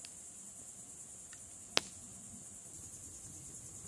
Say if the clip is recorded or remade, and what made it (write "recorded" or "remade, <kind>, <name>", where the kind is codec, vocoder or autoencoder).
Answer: recorded